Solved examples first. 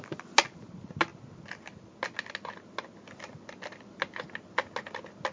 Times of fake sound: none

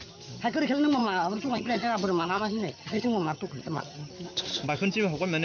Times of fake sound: 1.0-4.1 (vocoder, HiFi-GAN)